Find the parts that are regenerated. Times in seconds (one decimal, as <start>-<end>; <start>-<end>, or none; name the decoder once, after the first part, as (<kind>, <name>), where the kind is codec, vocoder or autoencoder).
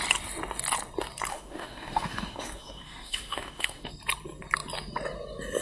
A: 1.3-3.9 (autoencoder, DAC-VAE)